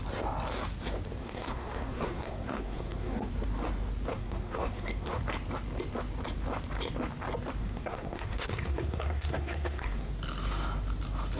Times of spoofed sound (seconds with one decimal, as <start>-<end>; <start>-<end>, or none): 1.2-3.3; 4.1-5.2; 7.6-10.1